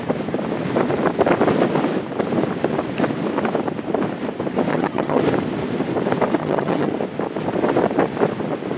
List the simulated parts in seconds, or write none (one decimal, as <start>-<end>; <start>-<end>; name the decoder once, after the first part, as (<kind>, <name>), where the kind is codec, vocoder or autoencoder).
4.7-5.2 (vocoder, HiFi-GAN); 6.4-6.9